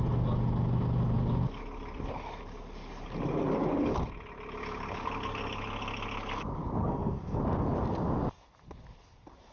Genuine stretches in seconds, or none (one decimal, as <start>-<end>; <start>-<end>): 0.0-6.8; 7.4-9.5